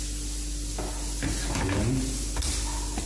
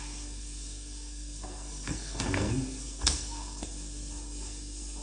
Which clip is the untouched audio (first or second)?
first